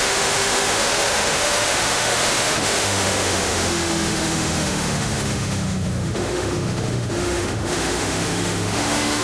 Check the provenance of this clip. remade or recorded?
remade